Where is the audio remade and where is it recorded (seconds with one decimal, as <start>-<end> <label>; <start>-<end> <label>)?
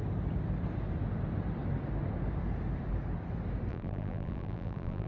0.0-3.7 recorded; 3.7-5.1 remade